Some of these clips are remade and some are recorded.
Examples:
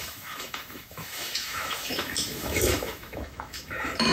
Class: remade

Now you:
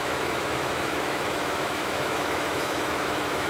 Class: remade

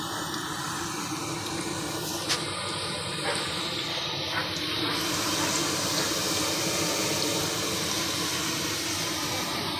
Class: recorded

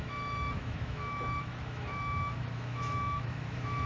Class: remade